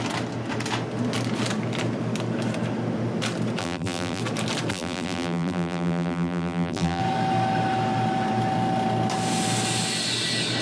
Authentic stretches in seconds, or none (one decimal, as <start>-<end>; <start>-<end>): 0.0-3.6; 4.2-4.7; 7.0-10.6